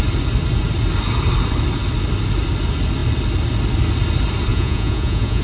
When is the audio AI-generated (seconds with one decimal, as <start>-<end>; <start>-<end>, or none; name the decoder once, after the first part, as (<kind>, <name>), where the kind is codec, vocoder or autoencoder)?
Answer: 4.5-5.4 (vocoder, Vocos)